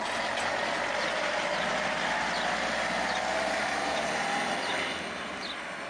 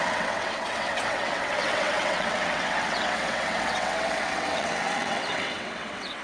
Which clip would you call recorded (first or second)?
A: first